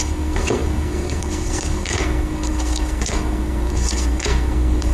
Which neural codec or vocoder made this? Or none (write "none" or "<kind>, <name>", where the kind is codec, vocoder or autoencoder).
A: codec, SNAC